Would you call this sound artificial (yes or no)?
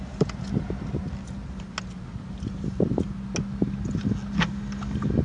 no